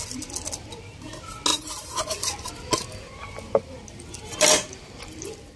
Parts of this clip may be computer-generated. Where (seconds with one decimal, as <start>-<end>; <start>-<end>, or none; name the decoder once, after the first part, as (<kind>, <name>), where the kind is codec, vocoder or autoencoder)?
1.5-2.0 (vocoder, BigVGAN v2)